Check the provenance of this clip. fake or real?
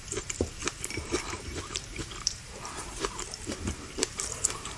fake